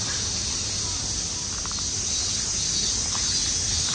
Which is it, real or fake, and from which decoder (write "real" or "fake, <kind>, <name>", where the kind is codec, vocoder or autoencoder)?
real